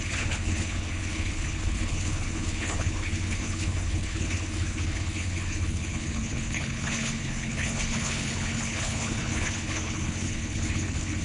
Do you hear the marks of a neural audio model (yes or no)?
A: yes